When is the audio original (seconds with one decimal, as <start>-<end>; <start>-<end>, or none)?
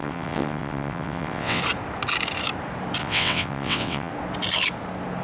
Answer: 1.6-3.0; 4.1-5.2